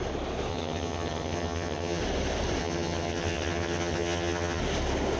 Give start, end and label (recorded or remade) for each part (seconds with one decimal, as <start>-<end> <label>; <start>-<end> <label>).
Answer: 0.0-0.5 recorded; 0.5-2.0 remade; 2.0-2.6 recorded; 2.6-4.6 remade; 4.6-5.2 recorded